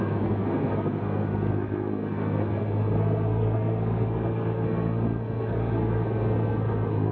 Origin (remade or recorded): remade